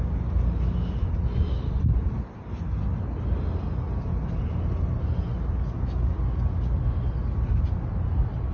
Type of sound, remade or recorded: recorded